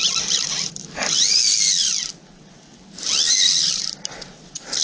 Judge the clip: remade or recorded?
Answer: recorded